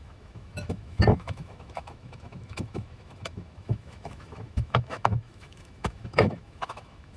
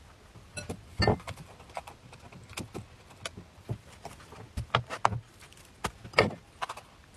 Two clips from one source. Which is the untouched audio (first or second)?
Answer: second